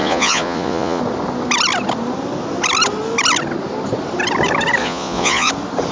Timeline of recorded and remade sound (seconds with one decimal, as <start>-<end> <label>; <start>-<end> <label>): 0.0-1.0 remade; 1.0-4.8 recorded; 4.8-5.5 remade; 5.5-5.9 recorded